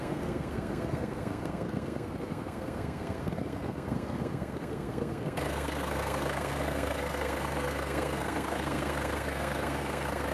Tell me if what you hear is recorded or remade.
remade